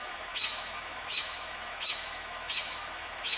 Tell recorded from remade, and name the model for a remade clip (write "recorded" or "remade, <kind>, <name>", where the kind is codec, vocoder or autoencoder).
remade, autoencoder, DAC-VAE